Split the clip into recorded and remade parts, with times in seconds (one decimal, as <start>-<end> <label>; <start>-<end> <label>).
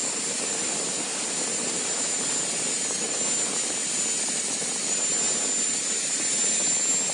0.0-0.8 remade; 0.8-7.1 recorded